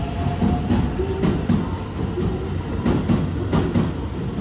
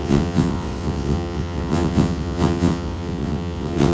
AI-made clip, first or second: second